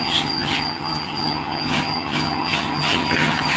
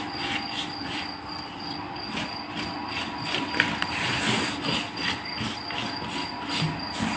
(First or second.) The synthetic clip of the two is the first